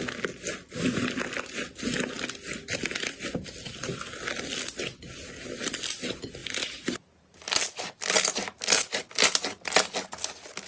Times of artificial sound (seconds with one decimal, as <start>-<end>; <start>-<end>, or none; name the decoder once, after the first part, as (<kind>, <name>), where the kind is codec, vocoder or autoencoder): none